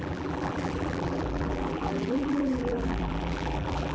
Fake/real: fake